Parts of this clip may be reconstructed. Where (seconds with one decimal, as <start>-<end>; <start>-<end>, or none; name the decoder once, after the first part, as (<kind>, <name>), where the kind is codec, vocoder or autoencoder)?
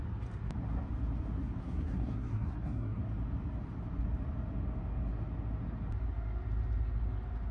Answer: 1.6-3.0 (codec, SNAC)